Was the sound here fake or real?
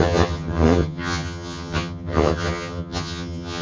fake